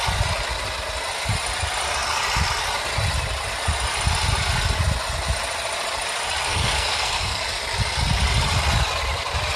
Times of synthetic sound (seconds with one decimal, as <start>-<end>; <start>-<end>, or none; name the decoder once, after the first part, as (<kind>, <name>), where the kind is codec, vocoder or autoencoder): 6.4-7.4 (codec, SNAC)